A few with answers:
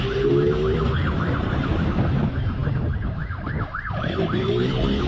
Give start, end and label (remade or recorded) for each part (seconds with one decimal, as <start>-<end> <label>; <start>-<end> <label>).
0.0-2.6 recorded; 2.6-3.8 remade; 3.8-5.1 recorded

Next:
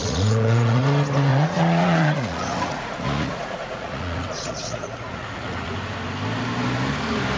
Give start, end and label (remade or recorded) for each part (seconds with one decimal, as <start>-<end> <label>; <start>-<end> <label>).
0.0-0.8 remade; 0.8-1.3 recorded; 1.3-5.7 remade; 5.7-7.4 recorded

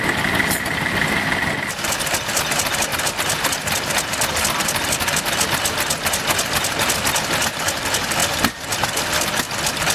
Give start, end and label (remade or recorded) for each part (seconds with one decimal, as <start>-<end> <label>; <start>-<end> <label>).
0.0-9.9 recorded